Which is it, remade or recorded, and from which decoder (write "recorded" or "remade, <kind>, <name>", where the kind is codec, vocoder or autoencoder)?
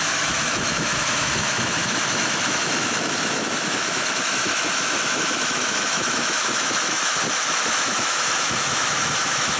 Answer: remade, autoencoder, DAC-VAE